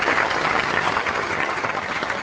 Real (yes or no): no